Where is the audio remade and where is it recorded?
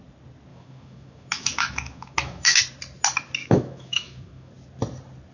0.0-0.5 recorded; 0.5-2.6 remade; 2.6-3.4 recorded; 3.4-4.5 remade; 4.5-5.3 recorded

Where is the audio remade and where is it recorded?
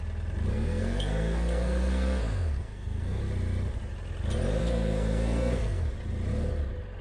0.0-0.5 recorded; 0.5-3.2 remade; 3.2-4.6 recorded; 4.6-5.9 remade; 5.9-7.0 recorded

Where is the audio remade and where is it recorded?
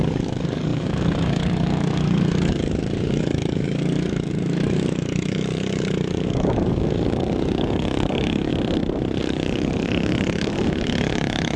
0.0-8.5 remade; 8.5-9.2 recorded; 9.2-11.6 remade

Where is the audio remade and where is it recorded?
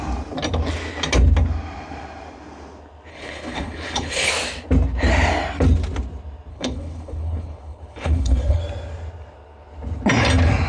0.0-3.1 recorded; 3.1-4.3 remade; 4.3-6.5 recorded; 6.5-8.6 remade; 8.6-10.7 recorded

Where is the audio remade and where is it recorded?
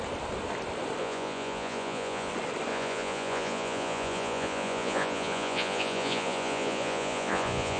0.0-1.0 recorded; 1.0-2.3 remade; 2.3-2.7 recorded; 2.7-7.8 remade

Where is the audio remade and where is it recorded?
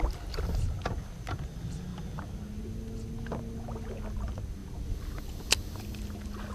0.0-6.5 recorded